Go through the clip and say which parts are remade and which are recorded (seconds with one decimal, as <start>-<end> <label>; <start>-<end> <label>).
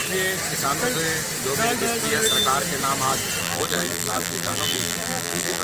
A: 0.0-3.4 recorded; 3.4-5.6 remade